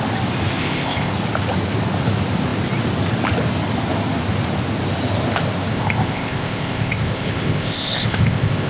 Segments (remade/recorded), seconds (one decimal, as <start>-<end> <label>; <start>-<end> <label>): 0.0-0.6 recorded; 0.6-1.1 remade; 1.1-5.7 recorded; 5.7-8.7 remade